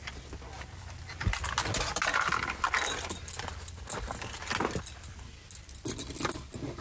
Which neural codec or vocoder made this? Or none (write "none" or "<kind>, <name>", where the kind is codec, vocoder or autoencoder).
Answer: none